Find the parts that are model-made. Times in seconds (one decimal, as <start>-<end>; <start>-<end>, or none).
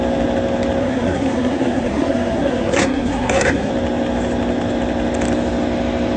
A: 0.8-3.7